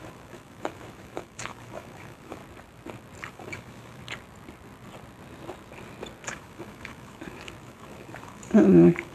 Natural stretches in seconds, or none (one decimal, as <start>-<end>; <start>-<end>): 2.4-3.3; 4.0-6.3